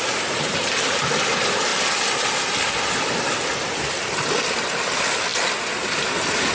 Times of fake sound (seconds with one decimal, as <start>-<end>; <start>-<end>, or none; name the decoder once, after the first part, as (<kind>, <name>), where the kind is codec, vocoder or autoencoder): none